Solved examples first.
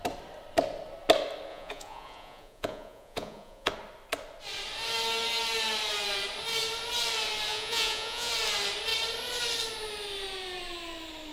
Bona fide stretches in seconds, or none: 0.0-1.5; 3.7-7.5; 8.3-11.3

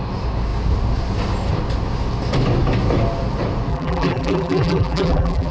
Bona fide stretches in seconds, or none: 0.0-3.7

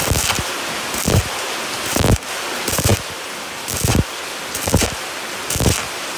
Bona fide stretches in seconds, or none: 0.0-6.2

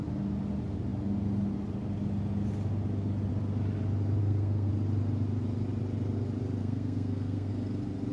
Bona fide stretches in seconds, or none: 0.0-4.2; 4.7-6.6; 7.5-8.1

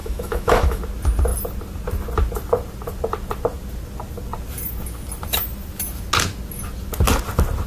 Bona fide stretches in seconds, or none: 0.8-7.7

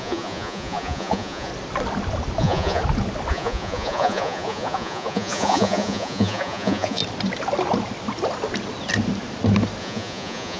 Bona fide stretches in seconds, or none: 1.5-2.4; 2.8-3.3; 7.0-9.8

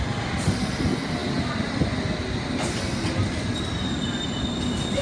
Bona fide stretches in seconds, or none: 0.0-5.0